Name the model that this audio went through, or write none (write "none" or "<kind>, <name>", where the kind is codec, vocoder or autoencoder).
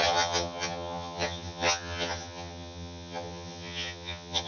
vocoder, HiFi-GAN